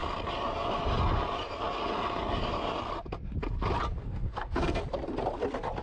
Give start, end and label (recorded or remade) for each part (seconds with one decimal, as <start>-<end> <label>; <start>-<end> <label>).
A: 0.0-4.0 recorded; 4.0-4.8 remade; 4.8-5.8 recorded